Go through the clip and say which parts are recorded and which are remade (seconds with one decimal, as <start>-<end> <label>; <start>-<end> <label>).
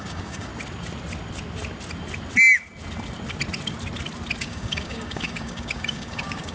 0.0-0.5 remade; 0.5-4.4 recorded; 4.4-6.5 remade